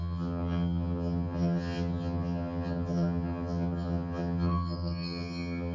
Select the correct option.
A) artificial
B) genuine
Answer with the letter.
A